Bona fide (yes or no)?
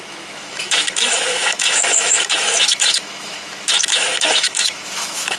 no